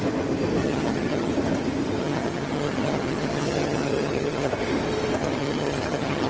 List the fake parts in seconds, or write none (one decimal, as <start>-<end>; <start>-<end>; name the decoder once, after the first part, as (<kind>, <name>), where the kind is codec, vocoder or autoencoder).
0.6-1.3 (vocoder, HiFi-GAN); 2.0-4.5; 5.2-6.3